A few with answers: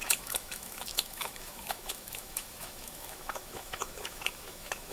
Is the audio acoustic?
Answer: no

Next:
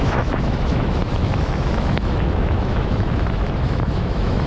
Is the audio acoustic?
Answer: no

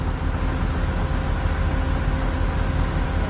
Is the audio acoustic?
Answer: yes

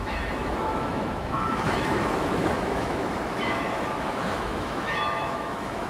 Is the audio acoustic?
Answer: no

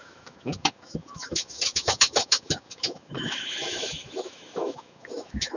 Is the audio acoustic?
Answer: no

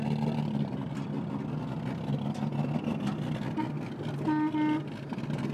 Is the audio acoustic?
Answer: yes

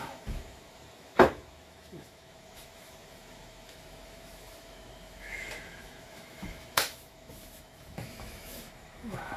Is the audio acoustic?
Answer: no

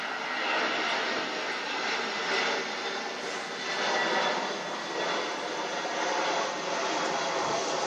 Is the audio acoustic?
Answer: yes